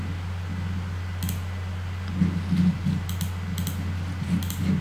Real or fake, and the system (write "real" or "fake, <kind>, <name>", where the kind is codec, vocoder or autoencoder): real